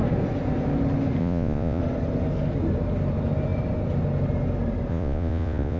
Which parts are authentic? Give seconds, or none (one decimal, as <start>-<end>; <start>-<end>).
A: 0.0-1.2; 1.8-4.9